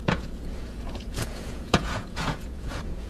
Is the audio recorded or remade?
remade